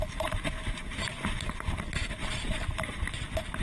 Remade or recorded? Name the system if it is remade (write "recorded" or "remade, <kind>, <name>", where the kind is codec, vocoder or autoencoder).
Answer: recorded